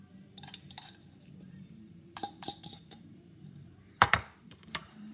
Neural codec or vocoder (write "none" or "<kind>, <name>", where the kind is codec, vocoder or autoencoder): vocoder, BigVGAN v2